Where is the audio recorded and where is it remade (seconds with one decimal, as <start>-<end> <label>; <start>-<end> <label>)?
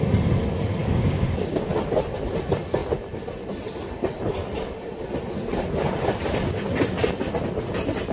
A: 0.0-0.8 recorded; 0.8-1.7 remade; 1.7-8.1 recorded